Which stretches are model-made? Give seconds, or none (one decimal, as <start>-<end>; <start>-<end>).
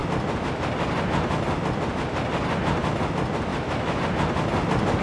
3.5-4.0